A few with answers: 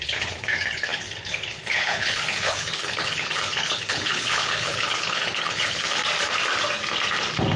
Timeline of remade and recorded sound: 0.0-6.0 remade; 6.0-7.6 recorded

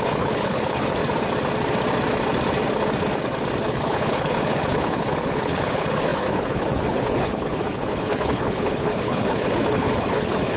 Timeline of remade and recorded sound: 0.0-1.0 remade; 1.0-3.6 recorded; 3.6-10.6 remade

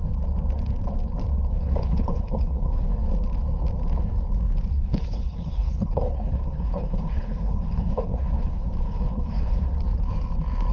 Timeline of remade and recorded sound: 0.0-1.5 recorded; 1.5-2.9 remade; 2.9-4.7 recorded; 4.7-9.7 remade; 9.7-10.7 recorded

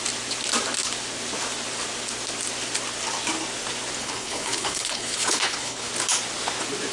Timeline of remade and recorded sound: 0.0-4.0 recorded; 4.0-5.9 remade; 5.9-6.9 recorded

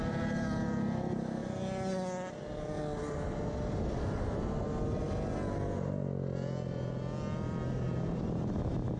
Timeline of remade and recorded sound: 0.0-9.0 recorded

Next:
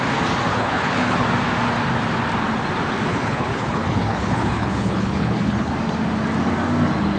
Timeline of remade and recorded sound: 0.0-0.5 recorded; 0.5-1.3 remade; 1.3-3.1 recorded; 3.1-5.7 remade; 5.7-7.2 recorded